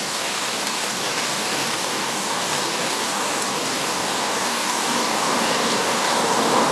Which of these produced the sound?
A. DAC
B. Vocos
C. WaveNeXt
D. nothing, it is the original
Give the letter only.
A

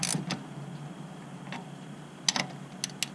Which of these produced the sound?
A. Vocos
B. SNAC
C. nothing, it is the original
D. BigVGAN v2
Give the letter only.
C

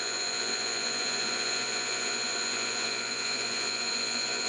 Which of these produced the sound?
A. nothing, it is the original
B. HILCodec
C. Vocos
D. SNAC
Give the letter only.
C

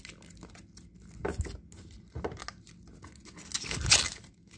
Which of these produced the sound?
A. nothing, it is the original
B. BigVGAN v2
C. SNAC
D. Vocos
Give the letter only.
A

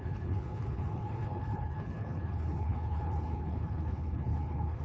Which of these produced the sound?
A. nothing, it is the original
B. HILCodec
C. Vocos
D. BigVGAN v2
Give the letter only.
B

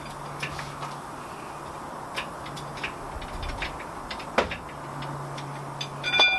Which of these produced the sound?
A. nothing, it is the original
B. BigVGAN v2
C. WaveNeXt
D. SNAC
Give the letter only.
A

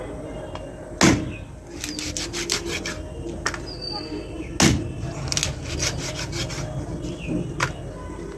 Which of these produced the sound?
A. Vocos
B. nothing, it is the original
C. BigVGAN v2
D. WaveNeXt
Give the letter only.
B